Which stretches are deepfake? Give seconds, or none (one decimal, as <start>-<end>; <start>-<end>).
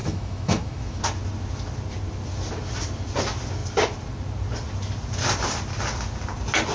0.0-1.0